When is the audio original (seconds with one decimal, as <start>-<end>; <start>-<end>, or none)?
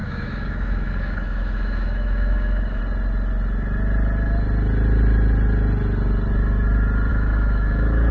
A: 2.8-7.1